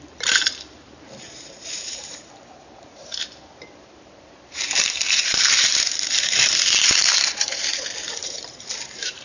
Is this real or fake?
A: fake